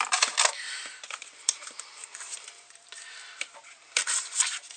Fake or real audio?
fake